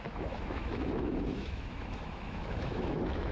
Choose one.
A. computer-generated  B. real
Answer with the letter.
A